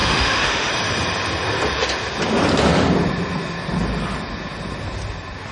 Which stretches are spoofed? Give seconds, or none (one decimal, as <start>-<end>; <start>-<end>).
0.0-0.7